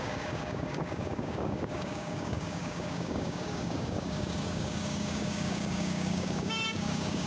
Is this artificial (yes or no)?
yes